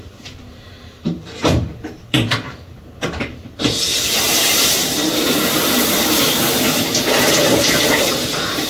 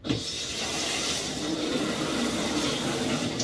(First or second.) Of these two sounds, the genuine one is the second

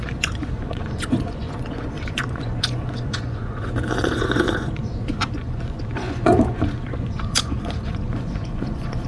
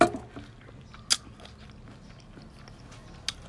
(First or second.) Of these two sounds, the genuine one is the second